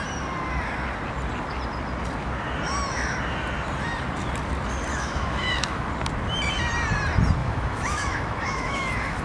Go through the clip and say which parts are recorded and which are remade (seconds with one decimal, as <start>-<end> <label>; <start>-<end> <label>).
0.0-4.9 recorded; 4.9-5.9 remade; 5.9-7.4 recorded; 7.4-9.2 remade